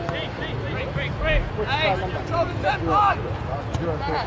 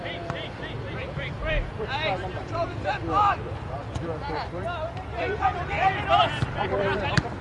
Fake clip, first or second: second